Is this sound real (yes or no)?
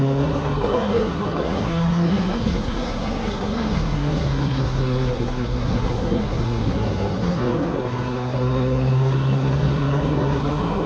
no